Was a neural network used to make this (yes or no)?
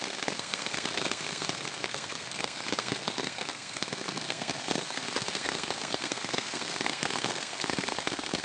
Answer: yes